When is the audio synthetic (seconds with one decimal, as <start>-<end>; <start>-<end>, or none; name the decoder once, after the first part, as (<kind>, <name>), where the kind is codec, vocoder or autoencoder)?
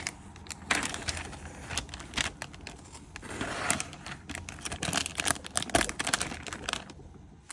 none